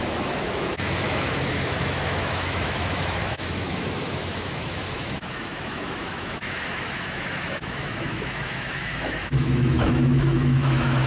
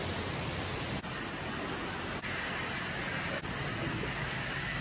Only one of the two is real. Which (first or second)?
second